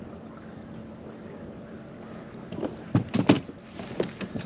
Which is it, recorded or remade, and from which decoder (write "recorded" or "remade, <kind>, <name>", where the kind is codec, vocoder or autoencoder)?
recorded